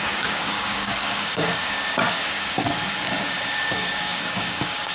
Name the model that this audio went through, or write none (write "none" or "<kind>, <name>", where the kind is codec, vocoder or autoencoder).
codec, DAC